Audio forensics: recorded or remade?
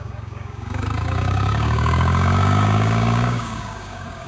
remade